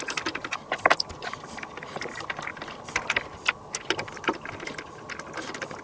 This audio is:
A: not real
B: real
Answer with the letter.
B